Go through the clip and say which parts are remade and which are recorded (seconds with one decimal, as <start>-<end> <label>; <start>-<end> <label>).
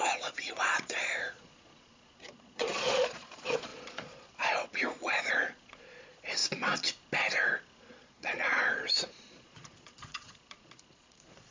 0.0-6.4 remade; 6.4-7.9 recorded; 7.9-11.5 remade